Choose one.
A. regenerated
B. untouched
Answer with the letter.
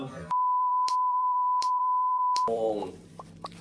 A